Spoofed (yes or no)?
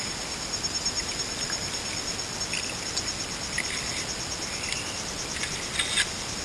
no